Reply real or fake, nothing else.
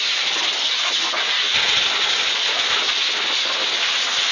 real